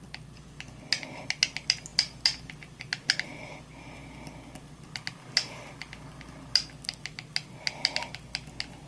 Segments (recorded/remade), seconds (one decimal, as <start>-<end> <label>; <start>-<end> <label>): 0.0-8.9 recorded